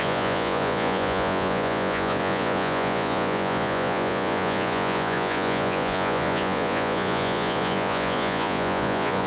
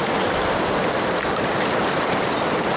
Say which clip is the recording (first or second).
second